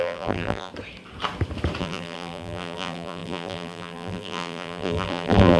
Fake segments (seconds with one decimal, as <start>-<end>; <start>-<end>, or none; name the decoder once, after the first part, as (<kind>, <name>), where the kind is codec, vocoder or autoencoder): 0.0-0.7 (vocoder, BigVGAN v2); 1.8-5.6